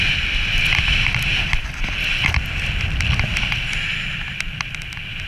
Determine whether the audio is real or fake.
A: real